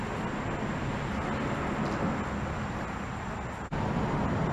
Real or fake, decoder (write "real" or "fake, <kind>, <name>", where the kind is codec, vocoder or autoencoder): real